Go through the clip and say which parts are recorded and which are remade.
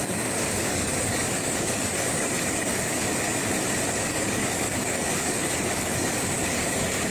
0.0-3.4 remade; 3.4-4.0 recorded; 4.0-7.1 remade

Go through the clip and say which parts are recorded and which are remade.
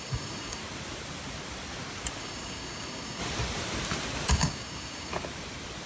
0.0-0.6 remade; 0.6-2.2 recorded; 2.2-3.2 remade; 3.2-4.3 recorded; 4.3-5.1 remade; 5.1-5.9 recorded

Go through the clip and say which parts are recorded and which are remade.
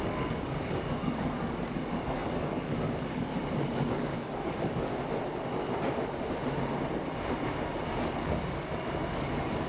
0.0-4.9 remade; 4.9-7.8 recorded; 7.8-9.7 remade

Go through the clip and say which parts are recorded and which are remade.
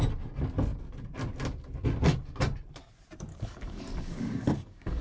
0.0-3.3 recorded; 3.3-5.0 remade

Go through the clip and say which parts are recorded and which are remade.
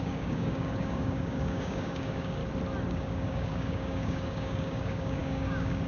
0.0-2.4 remade; 2.4-2.9 recorded; 2.9-5.9 remade